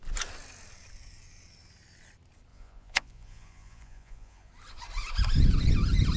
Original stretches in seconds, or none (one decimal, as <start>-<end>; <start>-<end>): 0.0-2.5; 4.5-6.2

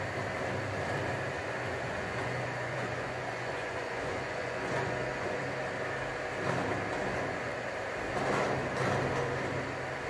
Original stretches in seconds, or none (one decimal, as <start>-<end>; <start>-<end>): 0.0-1.4; 5.4-7.1; 7.7-10.1

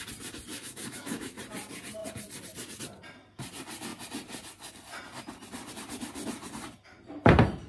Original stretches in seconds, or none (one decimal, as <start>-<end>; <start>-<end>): 0.0-0.5; 1.4-7.7

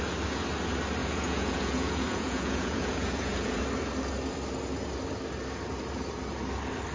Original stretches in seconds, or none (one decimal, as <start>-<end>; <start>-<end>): 0.0-1.0; 3.6-6.9